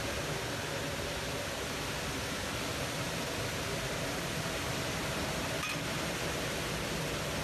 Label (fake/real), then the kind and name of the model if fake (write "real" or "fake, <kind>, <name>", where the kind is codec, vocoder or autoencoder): fake, vocoder, BigVGAN v2